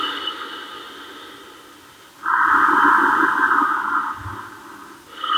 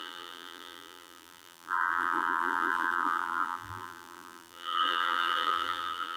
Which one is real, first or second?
first